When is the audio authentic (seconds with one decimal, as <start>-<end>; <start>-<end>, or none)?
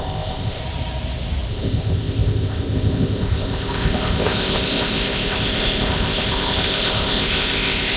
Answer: 0.6-1.5